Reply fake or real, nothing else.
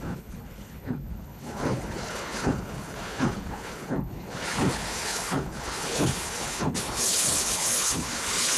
fake